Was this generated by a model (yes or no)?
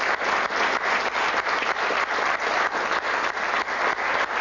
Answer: no